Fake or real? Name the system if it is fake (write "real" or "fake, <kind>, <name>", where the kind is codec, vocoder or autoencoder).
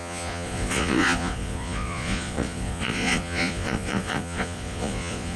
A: fake, vocoder, Vocos